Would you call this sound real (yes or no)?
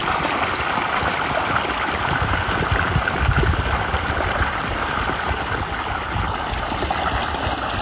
yes